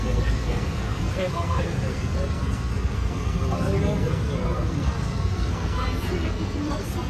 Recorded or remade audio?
remade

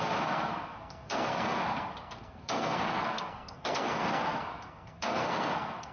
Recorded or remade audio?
remade